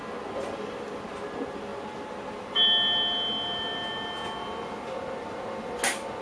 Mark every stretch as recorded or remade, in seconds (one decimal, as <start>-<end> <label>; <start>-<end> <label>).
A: 0.0-6.2 recorded